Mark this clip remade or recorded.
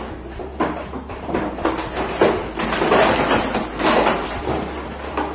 recorded